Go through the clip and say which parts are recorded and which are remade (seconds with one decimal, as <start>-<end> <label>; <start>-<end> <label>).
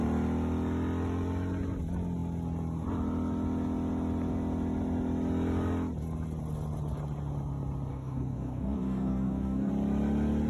0.0-7.9 recorded; 7.9-9.7 remade; 9.7-10.5 recorded